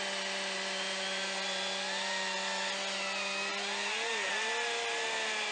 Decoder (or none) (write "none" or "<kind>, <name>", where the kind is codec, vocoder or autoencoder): none